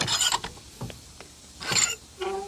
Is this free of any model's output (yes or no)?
yes